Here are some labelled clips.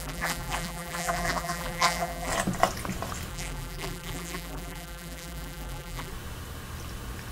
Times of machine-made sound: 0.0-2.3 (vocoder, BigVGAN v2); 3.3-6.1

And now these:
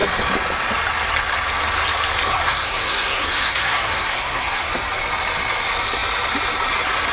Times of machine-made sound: 2.3-4.7 (codec, SNAC)

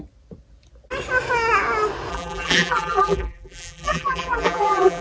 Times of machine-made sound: 2.1-5.0 (vocoder, BigVGAN v2)